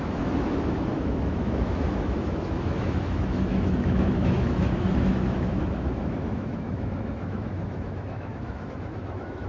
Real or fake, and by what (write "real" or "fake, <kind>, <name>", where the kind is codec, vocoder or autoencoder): fake, autoencoder, DAC-VAE